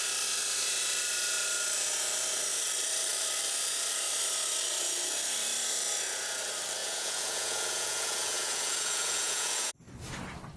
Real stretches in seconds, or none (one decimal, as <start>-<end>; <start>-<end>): 0.0-6.8; 9.7-10.6